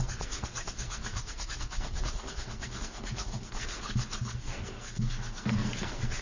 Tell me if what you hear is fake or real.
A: fake